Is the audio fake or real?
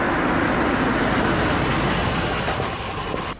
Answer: real